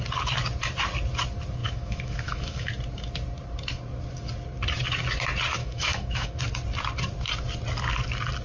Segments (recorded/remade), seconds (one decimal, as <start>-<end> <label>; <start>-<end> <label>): 0.0-1.6 recorded; 1.6-2.7 remade; 2.7-5.6 recorded; 5.6-6.4 remade; 6.4-8.4 recorded